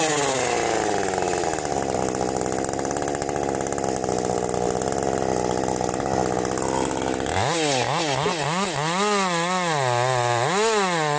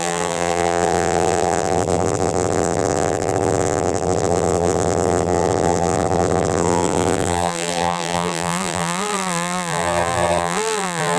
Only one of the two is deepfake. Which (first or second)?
second